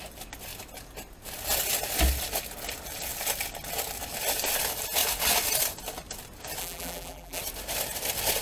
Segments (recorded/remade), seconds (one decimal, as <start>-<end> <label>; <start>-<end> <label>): 0.0-6.6 recorded; 6.6-7.4 remade; 7.4-8.4 recorded